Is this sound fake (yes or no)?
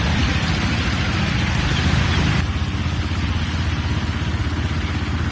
no